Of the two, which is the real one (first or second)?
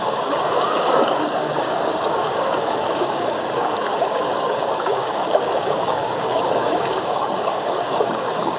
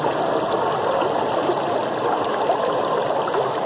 second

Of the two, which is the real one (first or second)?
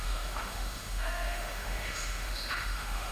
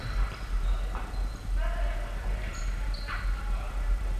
second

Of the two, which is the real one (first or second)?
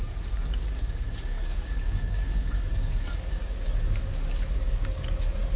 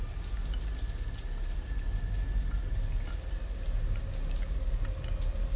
second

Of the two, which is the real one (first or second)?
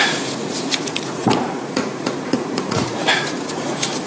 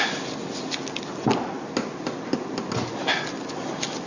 second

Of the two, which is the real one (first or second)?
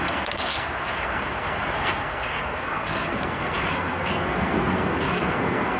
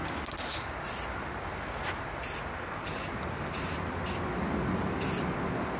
second